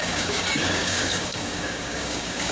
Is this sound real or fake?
fake